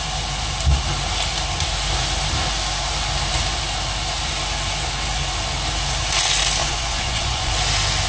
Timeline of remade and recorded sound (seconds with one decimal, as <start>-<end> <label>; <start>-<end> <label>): 0.0-6.6 recorded; 6.6-7.5 remade; 7.5-8.1 recorded

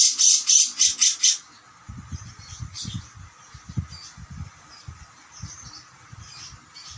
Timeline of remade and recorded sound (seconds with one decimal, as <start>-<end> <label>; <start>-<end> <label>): 0.0-7.0 recorded